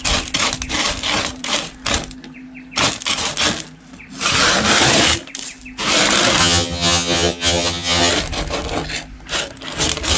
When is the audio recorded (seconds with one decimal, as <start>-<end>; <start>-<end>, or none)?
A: 0.0-6.4; 8.1-10.2